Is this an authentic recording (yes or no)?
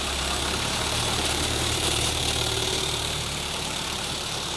no